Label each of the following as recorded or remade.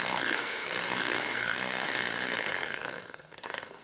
remade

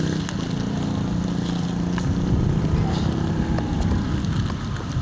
recorded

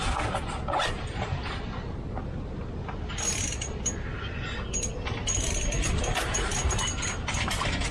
recorded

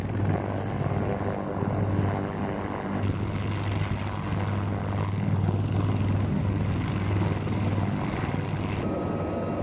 recorded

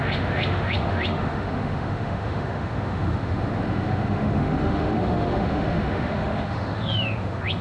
remade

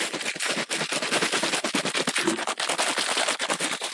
recorded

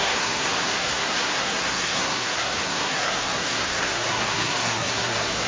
remade